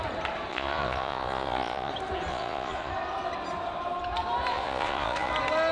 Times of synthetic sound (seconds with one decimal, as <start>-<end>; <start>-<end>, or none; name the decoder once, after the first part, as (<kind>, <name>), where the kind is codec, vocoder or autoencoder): 0.5-1.9 (vocoder, Vocos); 2.3-2.9; 4.5-5.3